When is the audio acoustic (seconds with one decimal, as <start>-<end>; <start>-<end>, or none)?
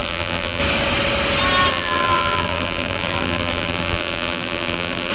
0.6-1.7